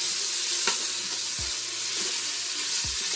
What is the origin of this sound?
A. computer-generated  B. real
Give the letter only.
B